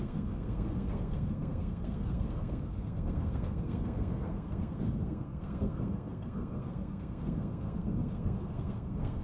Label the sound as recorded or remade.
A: remade